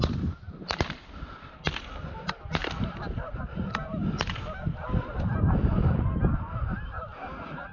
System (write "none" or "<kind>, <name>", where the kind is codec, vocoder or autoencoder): none